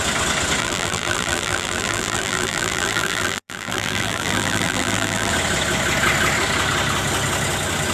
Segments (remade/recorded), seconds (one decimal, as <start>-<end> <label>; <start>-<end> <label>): 0.0-0.6 recorded; 0.6-5.3 remade; 5.3-7.9 recorded